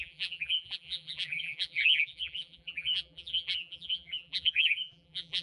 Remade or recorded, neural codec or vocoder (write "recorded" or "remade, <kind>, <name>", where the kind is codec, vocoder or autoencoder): remade, vocoder, BigVGAN v2